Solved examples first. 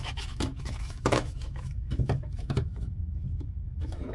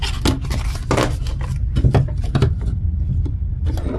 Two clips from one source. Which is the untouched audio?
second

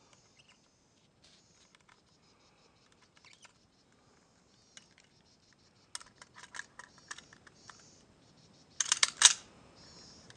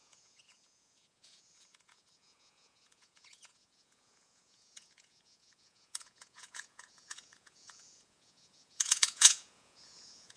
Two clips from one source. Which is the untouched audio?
first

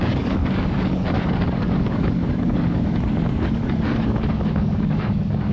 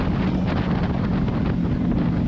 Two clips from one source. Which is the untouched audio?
second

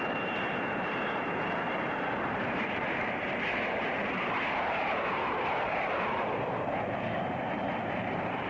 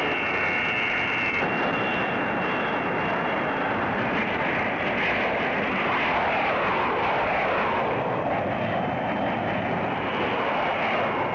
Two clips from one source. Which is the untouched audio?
second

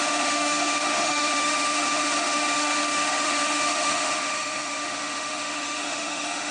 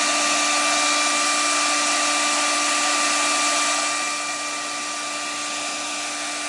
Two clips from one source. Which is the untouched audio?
second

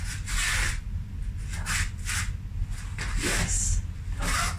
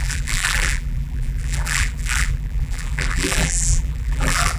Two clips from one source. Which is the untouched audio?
first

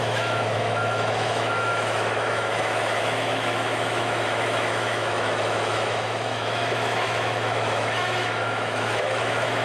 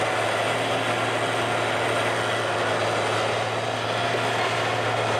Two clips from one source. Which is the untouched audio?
second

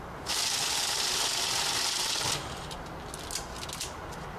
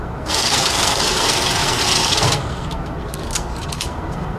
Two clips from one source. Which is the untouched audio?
first